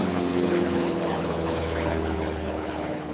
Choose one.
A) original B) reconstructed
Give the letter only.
B